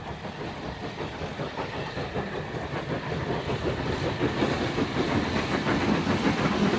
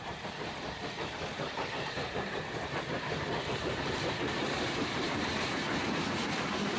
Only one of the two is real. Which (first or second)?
first